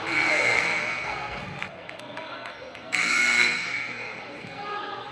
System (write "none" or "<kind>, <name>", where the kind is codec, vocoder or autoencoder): codec, SNAC